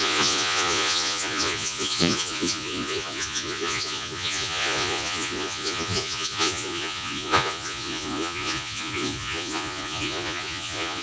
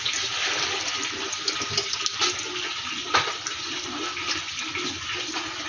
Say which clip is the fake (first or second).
first